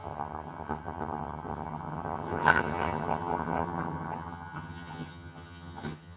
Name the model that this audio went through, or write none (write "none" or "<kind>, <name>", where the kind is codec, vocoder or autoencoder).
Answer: vocoder, HiFi-GAN